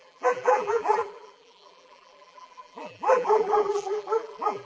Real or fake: fake